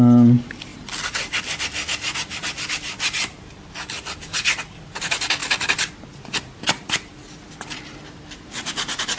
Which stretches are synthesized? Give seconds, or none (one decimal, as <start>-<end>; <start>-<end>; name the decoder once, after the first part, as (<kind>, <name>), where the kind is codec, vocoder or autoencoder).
none